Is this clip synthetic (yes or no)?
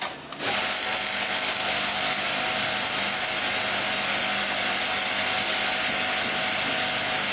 no